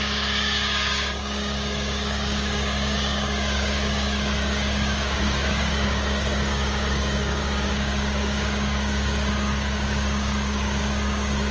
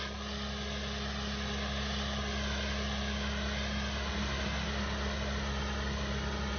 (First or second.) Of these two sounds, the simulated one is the first